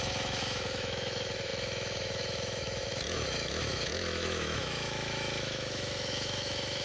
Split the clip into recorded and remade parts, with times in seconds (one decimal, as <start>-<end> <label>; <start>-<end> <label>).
0.0-6.8 remade